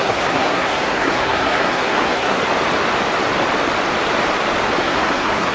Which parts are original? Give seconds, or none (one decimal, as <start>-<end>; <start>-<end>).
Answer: 2.4-4.8